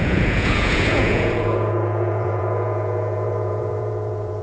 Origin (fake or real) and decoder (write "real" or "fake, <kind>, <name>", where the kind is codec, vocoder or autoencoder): fake, vocoder, Vocos